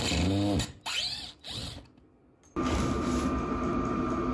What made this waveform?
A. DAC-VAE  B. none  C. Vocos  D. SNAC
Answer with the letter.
B